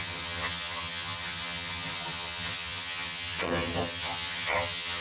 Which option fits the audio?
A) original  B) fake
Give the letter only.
B